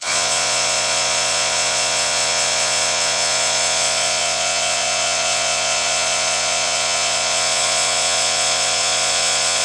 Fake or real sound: fake